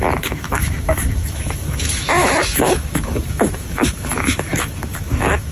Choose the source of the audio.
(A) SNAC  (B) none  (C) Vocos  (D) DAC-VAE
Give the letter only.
D